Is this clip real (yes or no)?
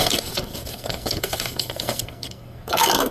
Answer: no